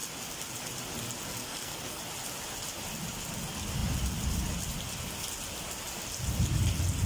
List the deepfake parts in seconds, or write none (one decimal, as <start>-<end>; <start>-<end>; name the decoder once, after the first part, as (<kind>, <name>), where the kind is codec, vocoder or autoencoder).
1.4-2.0 (codec, SNAC)